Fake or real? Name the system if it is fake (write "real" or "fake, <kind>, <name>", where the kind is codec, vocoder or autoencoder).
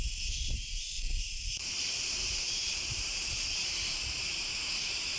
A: fake, vocoder, BigVGAN v2